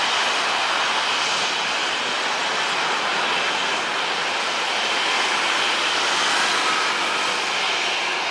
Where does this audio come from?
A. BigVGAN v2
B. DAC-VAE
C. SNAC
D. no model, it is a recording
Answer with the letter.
D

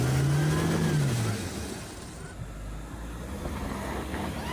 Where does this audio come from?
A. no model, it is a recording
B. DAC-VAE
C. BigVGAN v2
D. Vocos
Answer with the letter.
A